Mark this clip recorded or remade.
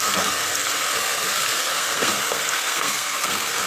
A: remade